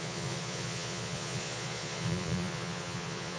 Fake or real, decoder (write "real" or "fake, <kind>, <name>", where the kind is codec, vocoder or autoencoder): fake, vocoder, Vocos